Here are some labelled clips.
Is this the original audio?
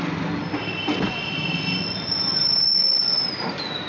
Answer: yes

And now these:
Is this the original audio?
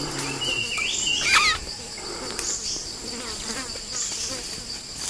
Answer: yes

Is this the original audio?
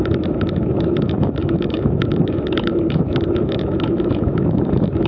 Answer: no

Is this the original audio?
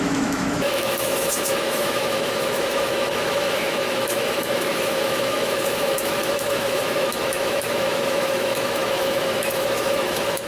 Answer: no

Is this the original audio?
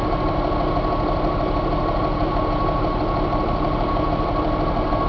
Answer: yes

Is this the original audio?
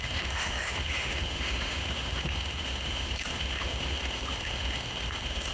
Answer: no